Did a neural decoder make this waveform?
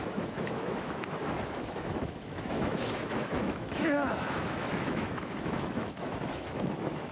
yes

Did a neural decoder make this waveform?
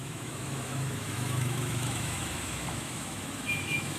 yes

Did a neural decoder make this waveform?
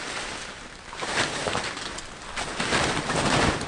no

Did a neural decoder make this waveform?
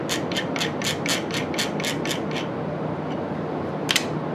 no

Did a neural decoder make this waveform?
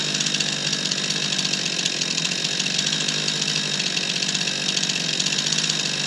no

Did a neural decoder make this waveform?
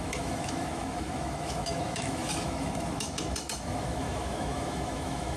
yes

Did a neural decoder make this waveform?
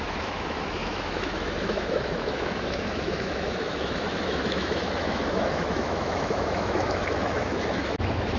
yes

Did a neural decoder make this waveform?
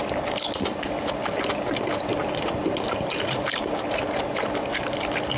no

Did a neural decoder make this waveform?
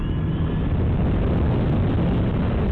no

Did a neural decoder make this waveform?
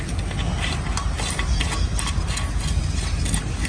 no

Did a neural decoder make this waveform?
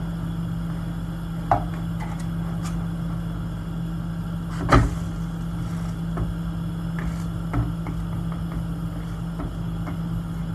no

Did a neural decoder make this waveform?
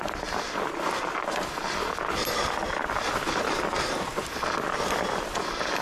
no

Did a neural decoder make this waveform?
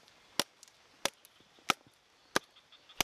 no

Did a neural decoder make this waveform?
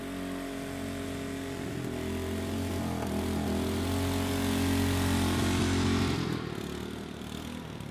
no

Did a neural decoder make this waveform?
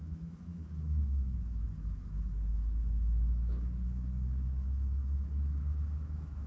yes